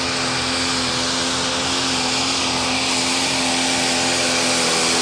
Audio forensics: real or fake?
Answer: real